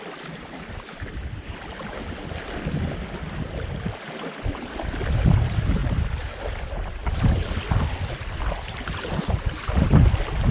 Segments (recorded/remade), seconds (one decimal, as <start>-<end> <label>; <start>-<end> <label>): 0.0-10.5 recorded